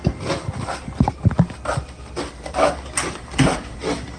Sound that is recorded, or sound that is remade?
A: recorded